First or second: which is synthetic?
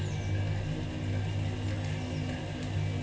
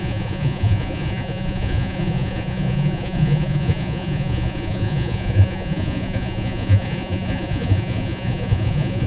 second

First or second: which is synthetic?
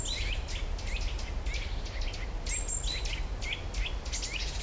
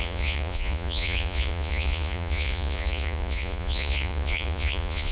second